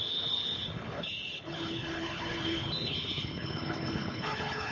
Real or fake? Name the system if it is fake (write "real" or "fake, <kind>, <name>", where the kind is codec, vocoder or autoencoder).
fake, codec, HILCodec